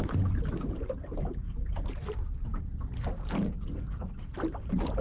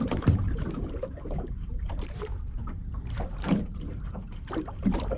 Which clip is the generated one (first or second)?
second